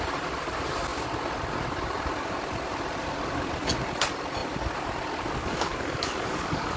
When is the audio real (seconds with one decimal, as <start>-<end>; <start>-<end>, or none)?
0.0-5.4